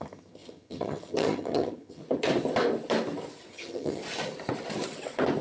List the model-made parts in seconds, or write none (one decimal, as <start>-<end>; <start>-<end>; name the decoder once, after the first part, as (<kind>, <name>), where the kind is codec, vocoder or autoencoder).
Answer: 0.0-2.0 (vocoder, HiFi-GAN); 3.5-4.0